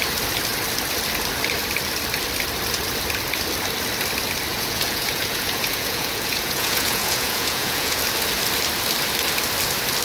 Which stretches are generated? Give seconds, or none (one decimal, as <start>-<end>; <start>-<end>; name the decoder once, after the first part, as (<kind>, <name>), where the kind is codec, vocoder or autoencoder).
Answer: 4.5-8.0 (vocoder, Vocos)